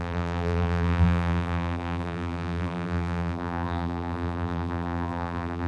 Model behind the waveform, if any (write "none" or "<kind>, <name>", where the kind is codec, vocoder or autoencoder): vocoder, BigVGAN v2